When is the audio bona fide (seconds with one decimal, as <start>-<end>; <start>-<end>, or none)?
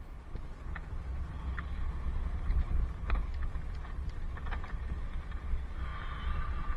0.0-6.8